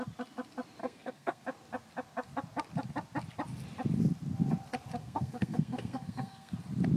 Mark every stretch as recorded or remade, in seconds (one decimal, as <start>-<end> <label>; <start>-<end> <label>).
0.0-0.8 recorded; 0.8-1.4 remade; 1.4-5.0 recorded; 5.0-6.5 remade; 6.5-7.0 recorded